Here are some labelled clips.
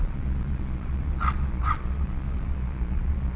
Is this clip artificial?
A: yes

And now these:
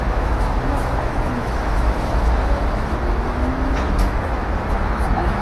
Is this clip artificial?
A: yes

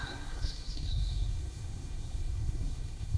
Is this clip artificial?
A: yes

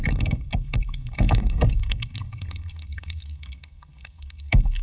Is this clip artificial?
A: yes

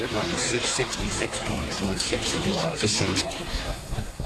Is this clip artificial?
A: yes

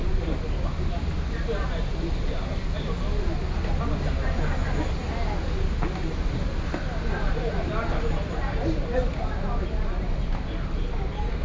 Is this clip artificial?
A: no